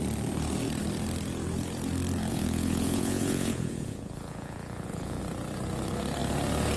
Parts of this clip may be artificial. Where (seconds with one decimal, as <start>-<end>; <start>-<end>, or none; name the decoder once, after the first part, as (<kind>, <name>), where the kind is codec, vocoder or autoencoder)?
2.3-5.2 (vocoder, Vocos)